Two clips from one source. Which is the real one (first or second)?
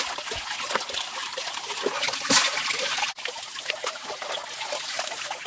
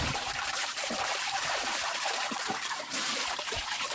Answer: first